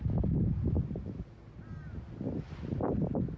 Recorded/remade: recorded